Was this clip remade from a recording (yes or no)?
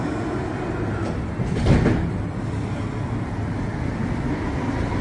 no